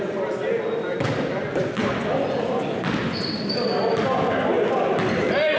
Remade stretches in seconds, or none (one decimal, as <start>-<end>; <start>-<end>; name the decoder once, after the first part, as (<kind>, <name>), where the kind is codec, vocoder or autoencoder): none